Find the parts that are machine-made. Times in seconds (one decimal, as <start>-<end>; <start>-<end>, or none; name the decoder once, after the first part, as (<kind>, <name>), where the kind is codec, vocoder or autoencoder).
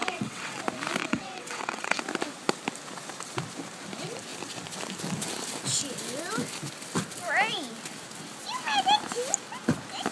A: 0.0-0.6 (vocoder, WaveNeXt); 1.0-2.0